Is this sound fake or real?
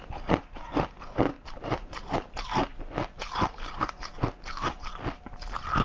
real